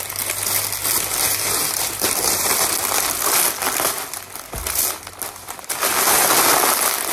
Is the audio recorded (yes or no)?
yes